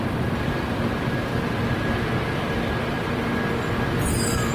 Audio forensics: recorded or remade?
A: recorded